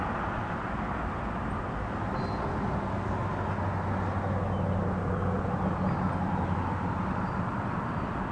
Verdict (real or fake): real